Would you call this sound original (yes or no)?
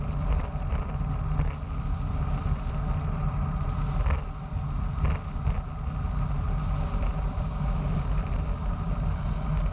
yes